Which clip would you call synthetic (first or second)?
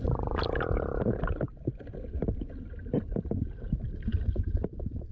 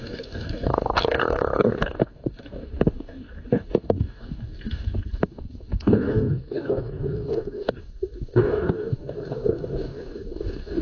second